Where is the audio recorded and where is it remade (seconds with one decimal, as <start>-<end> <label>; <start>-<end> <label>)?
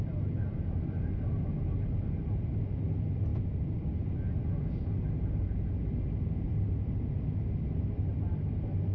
0.0-8.9 recorded